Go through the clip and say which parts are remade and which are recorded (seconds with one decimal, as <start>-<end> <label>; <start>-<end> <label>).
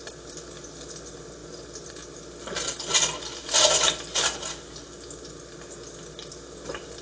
0.0-7.0 recorded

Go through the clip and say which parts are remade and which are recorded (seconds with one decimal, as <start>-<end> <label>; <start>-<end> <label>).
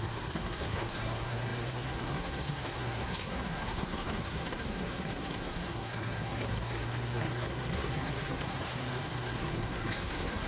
0.0-10.5 remade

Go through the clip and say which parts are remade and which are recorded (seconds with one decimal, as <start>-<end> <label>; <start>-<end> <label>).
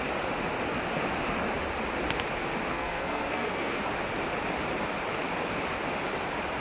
0.0-2.7 recorded; 2.7-3.8 remade; 3.8-6.6 recorded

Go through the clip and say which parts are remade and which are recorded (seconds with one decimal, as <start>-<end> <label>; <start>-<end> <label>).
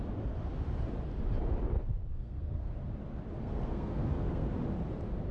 0.0-2.1 recorded; 2.1-2.7 remade; 2.7-3.4 recorded; 3.4-4.5 remade; 4.5-5.3 recorded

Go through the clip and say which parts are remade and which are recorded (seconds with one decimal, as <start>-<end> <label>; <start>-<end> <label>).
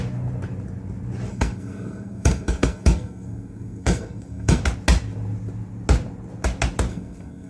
0.0-1.3 recorded; 1.3-4.6 remade; 4.6-6.9 recorded; 6.9-7.5 remade